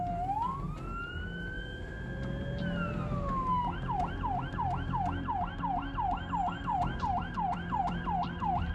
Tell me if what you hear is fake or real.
real